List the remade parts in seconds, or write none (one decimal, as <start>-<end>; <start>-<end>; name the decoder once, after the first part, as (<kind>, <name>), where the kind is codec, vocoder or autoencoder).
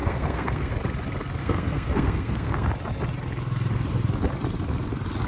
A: 0.0-0.7 (codec, SNAC); 1.4-2.7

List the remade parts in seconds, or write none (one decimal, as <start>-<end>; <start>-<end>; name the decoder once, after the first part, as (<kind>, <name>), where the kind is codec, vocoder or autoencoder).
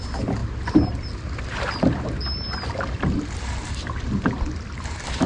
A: none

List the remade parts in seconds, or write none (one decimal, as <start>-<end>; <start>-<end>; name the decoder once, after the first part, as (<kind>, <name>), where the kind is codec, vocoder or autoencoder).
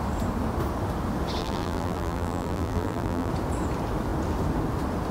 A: 1.4-3.3 (vocoder, BigVGAN v2)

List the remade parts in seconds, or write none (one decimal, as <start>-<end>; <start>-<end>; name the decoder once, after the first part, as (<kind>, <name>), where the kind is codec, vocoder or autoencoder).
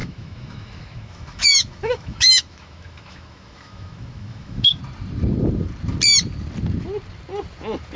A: 0.0-4.8 (autoencoder, DAC-VAE)